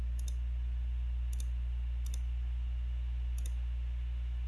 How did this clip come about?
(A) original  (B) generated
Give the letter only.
A